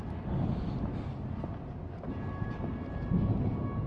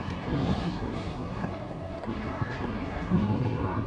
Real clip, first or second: first